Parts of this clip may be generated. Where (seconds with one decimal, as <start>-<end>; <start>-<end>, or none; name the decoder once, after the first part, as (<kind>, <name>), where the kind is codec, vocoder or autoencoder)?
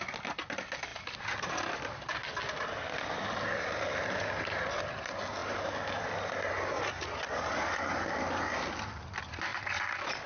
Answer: none